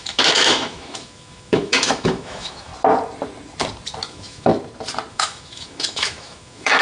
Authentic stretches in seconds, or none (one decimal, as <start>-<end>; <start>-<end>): 2.7-4.1; 4.5-5.1